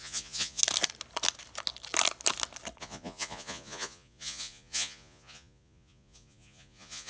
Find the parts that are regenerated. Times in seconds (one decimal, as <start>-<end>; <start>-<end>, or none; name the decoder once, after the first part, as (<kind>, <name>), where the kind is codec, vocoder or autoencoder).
0.0-0.6 (vocoder, Vocos); 2.8-7.1